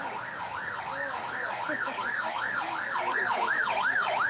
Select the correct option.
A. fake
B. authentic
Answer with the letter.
A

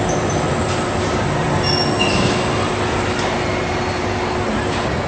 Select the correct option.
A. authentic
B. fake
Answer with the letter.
A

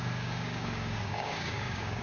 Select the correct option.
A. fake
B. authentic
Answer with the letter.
A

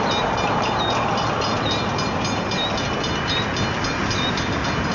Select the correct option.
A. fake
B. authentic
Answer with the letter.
B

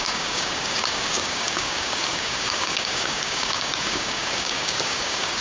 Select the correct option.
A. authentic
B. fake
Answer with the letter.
B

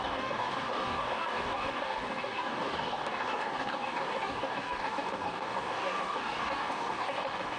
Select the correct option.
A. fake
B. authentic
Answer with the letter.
A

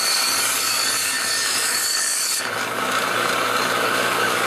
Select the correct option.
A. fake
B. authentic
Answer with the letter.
A